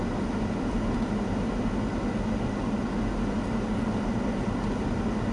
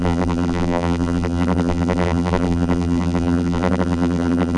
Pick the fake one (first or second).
second